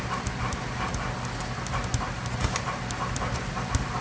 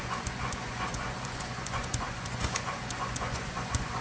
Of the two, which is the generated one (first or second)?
second